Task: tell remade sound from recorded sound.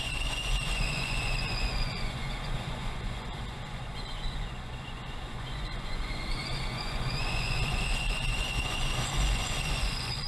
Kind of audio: remade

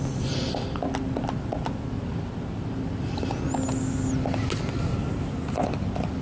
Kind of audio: recorded